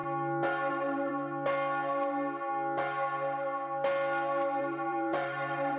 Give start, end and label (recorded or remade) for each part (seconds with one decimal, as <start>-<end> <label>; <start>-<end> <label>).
0.0-0.7 recorded; 0.7-1.1 remade; 1.1-4.6 recorded; 4.6-5.8 remade